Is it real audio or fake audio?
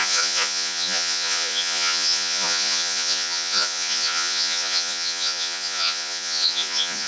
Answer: fake